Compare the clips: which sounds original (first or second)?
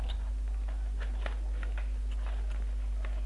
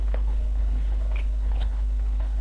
first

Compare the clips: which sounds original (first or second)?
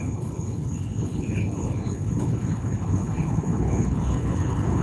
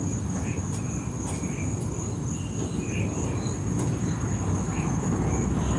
second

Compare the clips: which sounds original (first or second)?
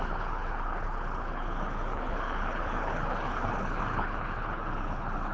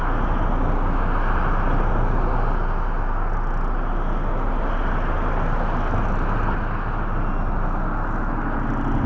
second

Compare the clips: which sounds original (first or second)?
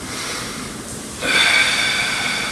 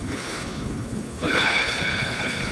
first